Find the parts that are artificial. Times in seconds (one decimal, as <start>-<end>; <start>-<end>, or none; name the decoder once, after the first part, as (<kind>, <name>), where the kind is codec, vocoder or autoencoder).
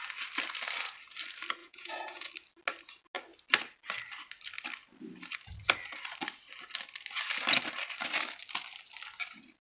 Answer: 1.6-2.3 (vocoder, Vocos)